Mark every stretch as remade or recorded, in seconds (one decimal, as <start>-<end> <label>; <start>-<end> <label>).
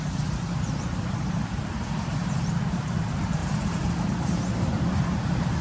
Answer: 0.0-5.6 remade